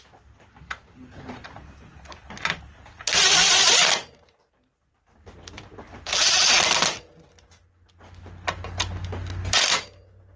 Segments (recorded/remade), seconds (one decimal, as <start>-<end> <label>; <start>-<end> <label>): 0.0-10.4 recorded